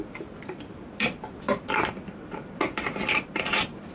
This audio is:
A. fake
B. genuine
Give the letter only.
B